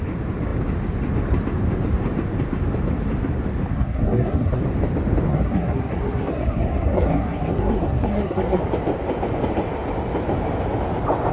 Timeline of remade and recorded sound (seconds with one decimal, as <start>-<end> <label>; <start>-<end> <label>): 0.0-3.7 recorded; 3.7-4.6 remade; 4.6-5.3 recorded; 5.3-8.6 remade; 8.6-11.3 recorded